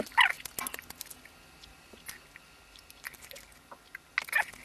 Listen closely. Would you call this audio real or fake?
real